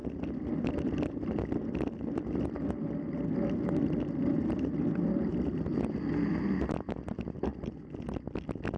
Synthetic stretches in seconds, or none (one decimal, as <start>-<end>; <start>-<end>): 0.0-5.3

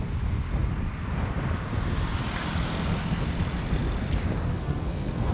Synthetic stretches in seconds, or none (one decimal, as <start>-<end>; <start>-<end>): 4.5-5.3

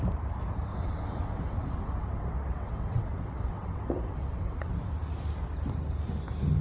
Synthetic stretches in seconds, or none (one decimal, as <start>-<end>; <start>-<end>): 0.7-4.7